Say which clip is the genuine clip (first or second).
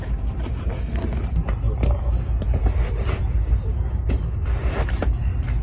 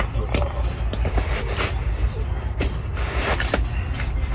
first